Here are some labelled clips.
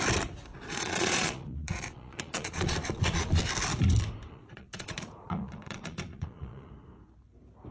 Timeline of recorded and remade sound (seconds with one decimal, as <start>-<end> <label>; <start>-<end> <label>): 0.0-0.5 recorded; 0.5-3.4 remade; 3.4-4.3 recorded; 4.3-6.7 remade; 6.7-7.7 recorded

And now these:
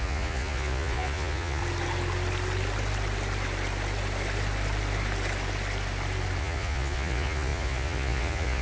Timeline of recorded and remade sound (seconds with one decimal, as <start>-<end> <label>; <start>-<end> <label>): 0.0-1.6 remade; 1.6-6.4 recorded; 6.4-8.6 remade

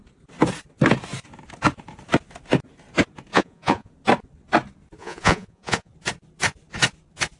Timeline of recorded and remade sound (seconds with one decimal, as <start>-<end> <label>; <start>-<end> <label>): 0.0-3.3 recorded; 3.3-3.9 remade; 3.9-5.0 recorded; 5.0-5.9 remade; 5.9-7.4 recorded

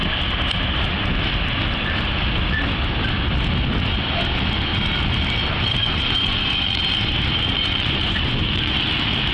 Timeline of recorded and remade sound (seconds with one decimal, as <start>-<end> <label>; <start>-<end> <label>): 0.0-5.8 recorded; 5.8-6.8 remade; 6.8-7.5 recorded; 7.5-8.8 remade; 8.8-9.3 recorded

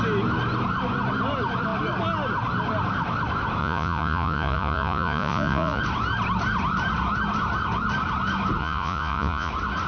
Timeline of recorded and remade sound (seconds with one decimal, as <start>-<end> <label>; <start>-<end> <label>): 0.0-3.6 recorded; 3.6-5.8 remade; 5.8-8.6 recorded; 8.6-9.5 remade; 9.5-9.9 recorded

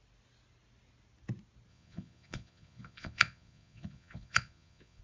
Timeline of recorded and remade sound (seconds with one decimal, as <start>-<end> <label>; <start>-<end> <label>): 0.0-1.7 recorded; 1.7-5.0 remade